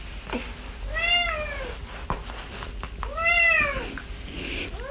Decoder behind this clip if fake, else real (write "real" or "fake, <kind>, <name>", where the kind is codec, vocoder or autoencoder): real